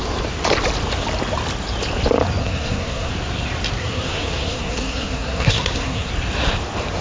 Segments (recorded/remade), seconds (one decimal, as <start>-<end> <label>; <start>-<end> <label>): 0.0-2.4 recorded; 2.4-3.1 remade; 3.1-3.8 recorded; 3.8-6.1 remade; 6.1-7.0 recorded